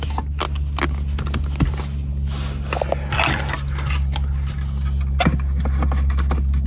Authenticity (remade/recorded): recorded